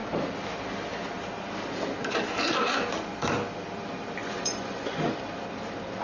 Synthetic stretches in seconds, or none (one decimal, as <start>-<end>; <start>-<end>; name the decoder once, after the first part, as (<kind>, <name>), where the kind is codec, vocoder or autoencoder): 4.2-5.1 (vocoder, Vocos)